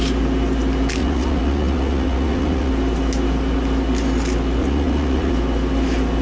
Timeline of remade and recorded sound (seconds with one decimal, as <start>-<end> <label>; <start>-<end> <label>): 0.0-1.0 recorded; 1.0-2.7 remade; 2.7-4.6 recorded; 4.6-5.3 remade; 5.3-6.2 recorded